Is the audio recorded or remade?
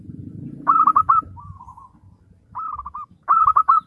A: recorded